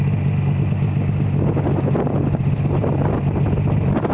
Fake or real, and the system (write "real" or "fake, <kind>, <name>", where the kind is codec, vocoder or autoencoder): real